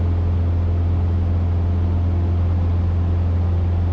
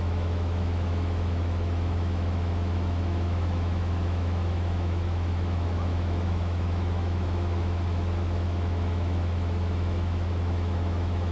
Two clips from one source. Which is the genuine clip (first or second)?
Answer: first